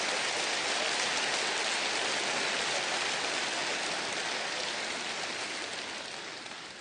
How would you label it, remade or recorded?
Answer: recorded